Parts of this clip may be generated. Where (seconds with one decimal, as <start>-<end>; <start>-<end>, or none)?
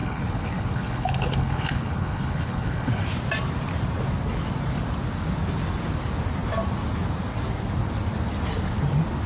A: 0.0-2.9